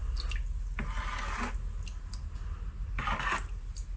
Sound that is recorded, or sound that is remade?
recorded